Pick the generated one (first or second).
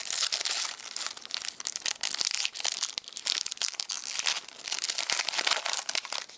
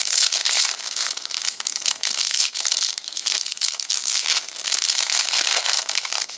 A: second